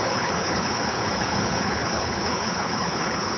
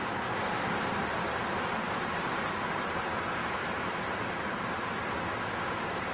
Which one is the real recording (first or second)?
second